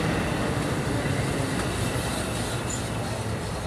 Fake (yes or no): no